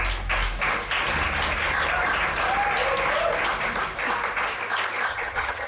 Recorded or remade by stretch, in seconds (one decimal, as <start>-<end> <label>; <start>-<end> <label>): 0.0-5.1 recorded; 5.1-5.7 remade